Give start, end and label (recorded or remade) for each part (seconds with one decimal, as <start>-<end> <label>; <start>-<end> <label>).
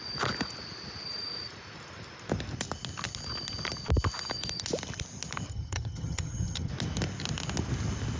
0.0-5.5 recorded; 5.5-6.7 remade; 6.7-8.2 recorded